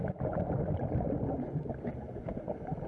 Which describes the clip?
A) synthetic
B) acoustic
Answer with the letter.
B